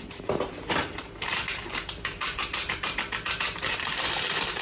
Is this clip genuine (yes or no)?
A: no